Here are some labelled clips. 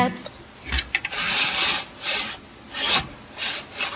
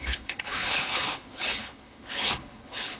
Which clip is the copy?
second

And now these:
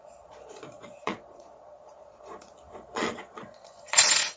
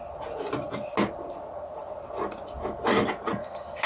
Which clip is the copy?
first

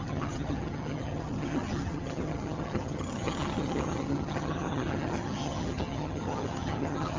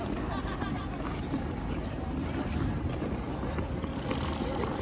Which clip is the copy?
first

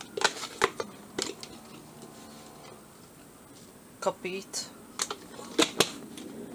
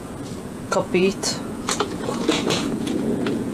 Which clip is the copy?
second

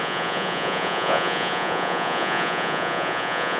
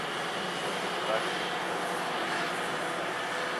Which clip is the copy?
first